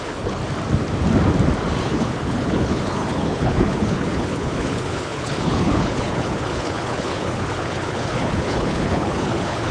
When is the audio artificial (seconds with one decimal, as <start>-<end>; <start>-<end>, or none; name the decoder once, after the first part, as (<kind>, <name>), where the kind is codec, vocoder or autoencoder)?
0.0-0.4 (codec, HILCodec); 1.8-9.7